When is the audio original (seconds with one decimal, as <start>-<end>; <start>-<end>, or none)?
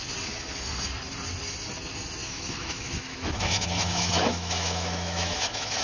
0.0-2.2